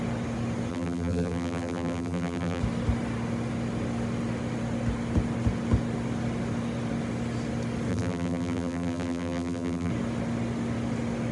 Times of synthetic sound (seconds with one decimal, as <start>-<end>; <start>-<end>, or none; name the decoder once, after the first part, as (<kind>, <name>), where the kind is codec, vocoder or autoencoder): 0.7-2.6 (vocoder, BigVGAN v2); 7.9-9.9